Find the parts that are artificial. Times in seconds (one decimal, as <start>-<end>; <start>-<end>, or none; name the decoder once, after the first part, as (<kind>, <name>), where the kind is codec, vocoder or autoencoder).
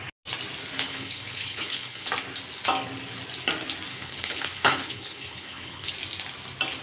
0.9-2.1 (codec, HILCodec); 3.9-5.9